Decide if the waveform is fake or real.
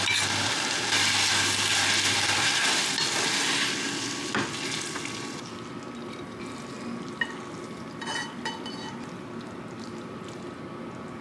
real